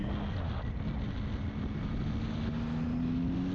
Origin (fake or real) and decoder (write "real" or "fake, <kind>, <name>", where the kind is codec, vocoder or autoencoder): real